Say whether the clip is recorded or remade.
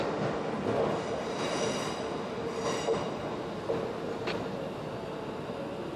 recorded